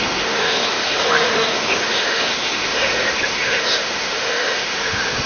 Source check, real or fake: fake